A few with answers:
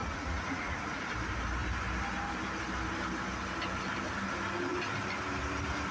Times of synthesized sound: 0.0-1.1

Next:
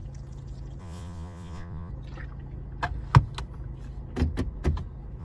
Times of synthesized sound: 0.8-1.9